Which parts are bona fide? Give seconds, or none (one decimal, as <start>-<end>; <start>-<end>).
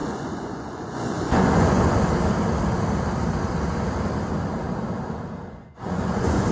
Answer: 1.9-5.6